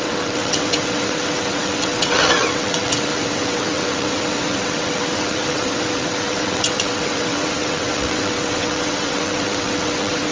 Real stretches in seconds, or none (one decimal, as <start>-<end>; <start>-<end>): none